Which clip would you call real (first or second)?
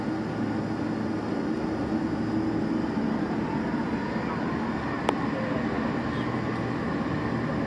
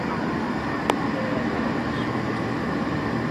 first